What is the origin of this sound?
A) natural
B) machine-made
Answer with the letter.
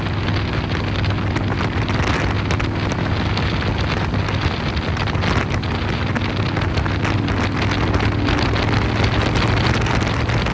A